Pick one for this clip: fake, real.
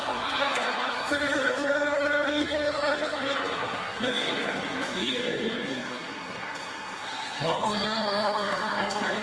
fake